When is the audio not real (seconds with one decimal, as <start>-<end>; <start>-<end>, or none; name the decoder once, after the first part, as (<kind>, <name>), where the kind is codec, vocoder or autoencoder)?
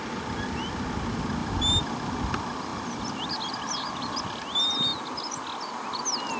none